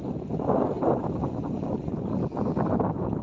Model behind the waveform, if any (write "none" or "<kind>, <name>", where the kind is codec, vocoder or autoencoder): none